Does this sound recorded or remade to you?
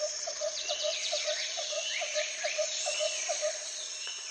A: remade